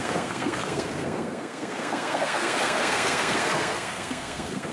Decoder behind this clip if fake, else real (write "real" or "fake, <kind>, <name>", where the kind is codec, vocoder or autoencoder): fake, codec, SNAC